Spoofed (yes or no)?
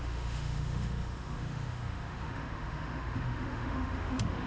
yes